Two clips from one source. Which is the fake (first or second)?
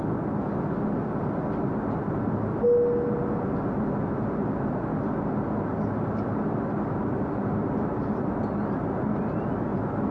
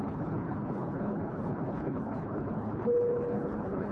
second